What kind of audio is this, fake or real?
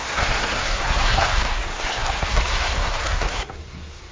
fake